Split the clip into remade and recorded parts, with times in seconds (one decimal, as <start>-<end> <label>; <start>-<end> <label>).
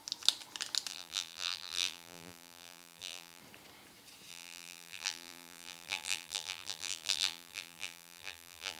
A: 0.0-0.9 recorded; 0.9-3.4 remade; 3.4-4.3 recorded; 4.3-8.8 remade